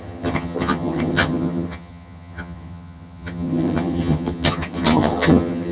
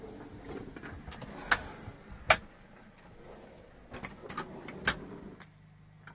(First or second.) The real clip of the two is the second